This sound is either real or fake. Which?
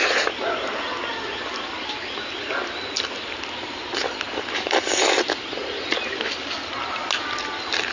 real